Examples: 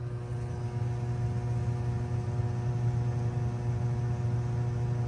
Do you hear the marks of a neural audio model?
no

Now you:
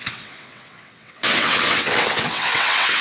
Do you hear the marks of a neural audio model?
yes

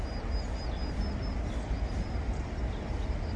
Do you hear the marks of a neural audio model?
no